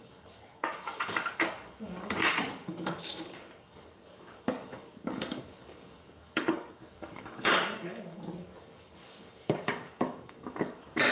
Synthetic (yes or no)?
yes